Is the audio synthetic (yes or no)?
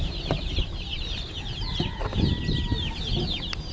no